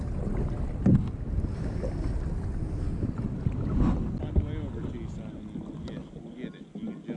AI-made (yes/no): no